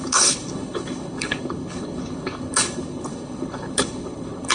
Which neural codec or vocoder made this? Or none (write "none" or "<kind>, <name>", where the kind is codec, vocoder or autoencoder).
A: codec, HILCodec